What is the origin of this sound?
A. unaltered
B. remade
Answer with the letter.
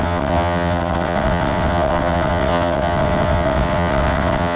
B